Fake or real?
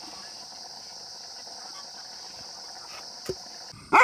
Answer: real